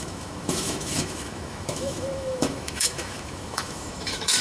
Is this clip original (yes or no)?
no